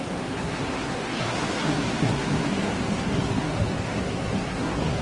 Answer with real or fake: fake